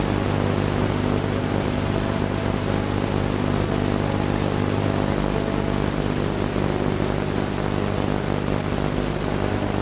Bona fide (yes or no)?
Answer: yes